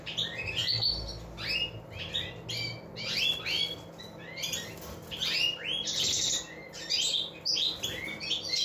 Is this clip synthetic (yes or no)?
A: no